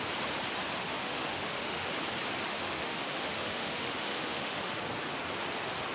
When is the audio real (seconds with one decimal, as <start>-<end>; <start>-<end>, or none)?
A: 0.0-0.8; 1.9-2.5; 4.8-5.9